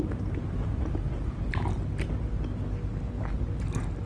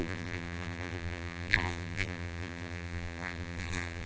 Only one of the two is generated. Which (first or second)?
second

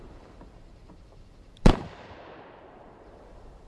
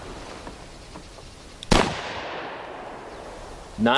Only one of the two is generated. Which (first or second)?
first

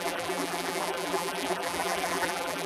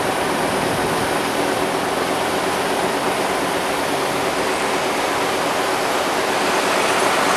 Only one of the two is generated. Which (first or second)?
first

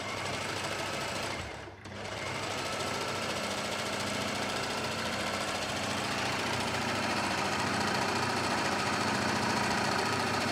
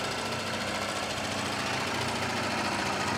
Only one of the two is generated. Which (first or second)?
first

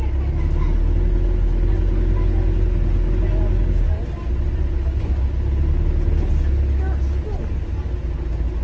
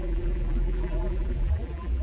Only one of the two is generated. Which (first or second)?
second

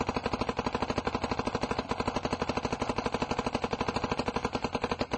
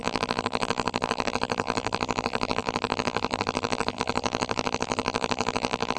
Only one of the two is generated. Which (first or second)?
second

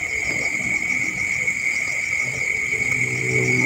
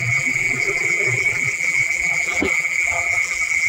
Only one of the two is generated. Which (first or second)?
second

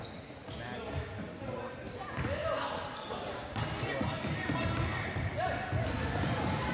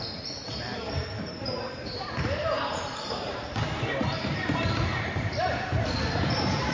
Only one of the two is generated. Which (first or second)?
second